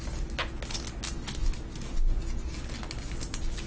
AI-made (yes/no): no